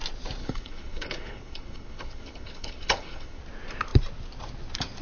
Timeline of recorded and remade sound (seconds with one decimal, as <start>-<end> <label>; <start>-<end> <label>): 0.0-0.4 recorded; 0.4-3.4 remade; 3.4-5.0 recorded